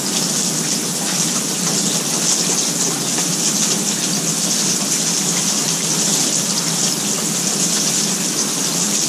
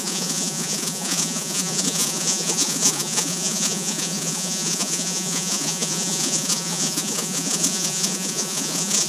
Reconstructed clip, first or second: second